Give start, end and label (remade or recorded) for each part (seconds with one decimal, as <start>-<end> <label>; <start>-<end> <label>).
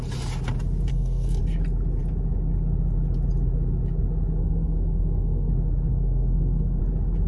0.0-0.9 recorded; 0.9-1.4 remade; 1.4-4.4 recorded; 4.4-5.5 remade; 5.5-5.9 recorded; 5.9-6.8 remade; 6.8-7.3 recorded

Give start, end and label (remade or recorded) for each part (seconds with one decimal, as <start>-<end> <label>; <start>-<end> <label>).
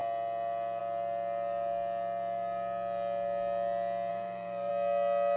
0.0-4.1 recorded; 4.1-4.7 remade; 4.7-5.4 recorded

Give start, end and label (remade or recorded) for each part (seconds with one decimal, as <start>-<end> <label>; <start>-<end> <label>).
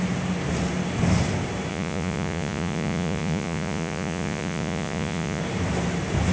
0.0-1.7 recorded; 1.7-5.4 remade; 5.4-6.3 recorded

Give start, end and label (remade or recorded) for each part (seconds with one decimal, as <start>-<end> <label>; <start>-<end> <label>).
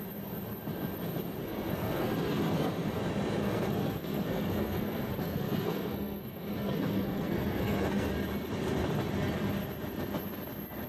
0.0-1.4 recorded; 1.4-3.0 remade; 3.0-3.4 recorded; 3.4-8.1 remade; 8.1-10.9 recorded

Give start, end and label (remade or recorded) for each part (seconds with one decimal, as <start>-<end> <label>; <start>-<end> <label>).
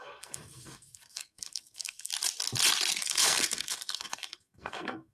0.0-2.1 remade; 2.1-3.0 recorded; 3.0-5.1 remade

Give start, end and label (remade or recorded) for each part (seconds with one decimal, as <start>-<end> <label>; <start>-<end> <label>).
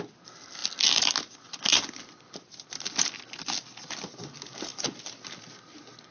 0.0-6.1 recorded